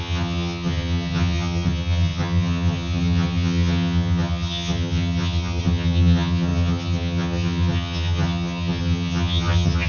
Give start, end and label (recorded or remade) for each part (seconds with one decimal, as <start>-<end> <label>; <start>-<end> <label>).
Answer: 0.0-9.9 remade